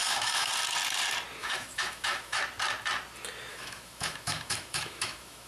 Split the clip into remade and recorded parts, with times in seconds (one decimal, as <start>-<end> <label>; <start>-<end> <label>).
0.0-0.5 remade; 0.5-1.4 recorded; 1.4-2.4 remade; 2.4-3.5 recorded; 3.5-5.5 remade

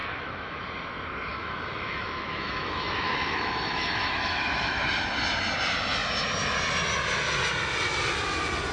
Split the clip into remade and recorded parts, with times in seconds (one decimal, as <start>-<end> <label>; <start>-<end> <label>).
0.0-0.6 remade; 0.6-1.3 recorded; 1.3-4.8 remade; 4.8-8.7 recorded